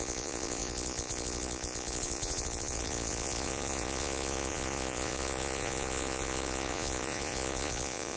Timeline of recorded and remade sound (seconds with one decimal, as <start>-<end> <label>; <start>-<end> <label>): 0.0-8.2 remade

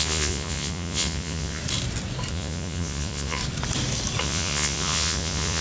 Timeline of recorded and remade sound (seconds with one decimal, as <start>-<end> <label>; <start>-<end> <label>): 0.0-1.6 remade; 1.6-2.3 recorded; 2.3-3.4 remade; 3.4-4.2 recorded; 4.2-5.6 remade

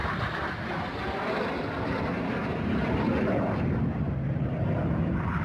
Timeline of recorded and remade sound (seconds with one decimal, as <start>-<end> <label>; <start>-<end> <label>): 0.0-5.4 recorded

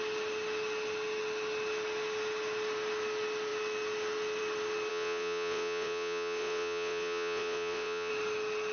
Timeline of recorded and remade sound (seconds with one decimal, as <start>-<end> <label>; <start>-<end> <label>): 0.0-4.9 recorded; 4.9-8.1 remade; 8.1-8.7 recorded

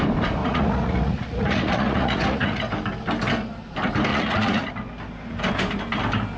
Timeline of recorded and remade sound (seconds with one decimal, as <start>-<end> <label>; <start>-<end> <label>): 0.0-0.4 recorded; 0.4-2.6 remade; 2.6-4.1 recorded; 4.1-4.7 remade; 4.7-6.4 recorded

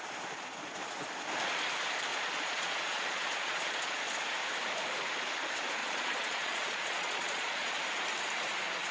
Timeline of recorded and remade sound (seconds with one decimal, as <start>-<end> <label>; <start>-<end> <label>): 0.0-2.1 recorded; 2.1-4.1 remade; 4.1-5.8 recorded; 5.8-7.8 remade; 7.8-8.9 recorded

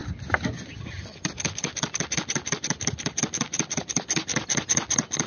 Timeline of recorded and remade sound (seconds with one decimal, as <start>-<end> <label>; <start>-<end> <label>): 0.0-5.3 recorded